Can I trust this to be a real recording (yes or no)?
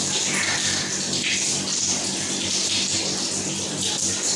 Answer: yes